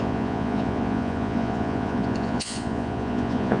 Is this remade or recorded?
remade